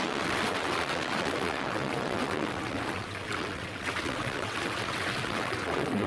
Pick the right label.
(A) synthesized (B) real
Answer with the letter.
A